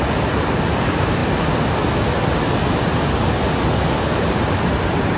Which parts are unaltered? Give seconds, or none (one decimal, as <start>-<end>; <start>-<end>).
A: 0.0-5.2